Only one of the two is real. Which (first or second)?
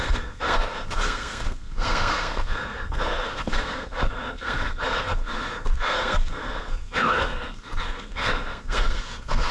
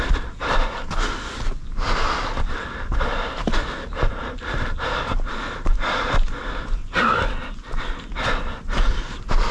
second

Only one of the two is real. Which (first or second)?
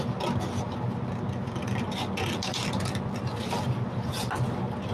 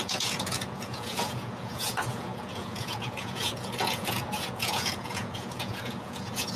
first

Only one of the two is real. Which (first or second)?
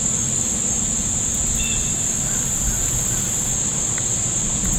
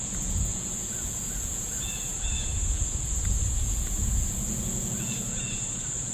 first